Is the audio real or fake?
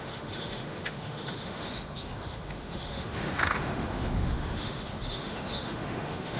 fake